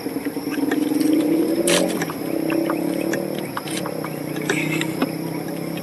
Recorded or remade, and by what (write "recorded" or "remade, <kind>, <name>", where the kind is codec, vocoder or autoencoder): recorded